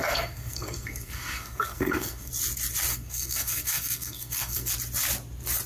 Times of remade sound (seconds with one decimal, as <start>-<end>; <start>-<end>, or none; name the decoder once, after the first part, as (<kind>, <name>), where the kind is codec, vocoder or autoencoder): 0.0-2.3 (codec, SNAC); 2.9-4.7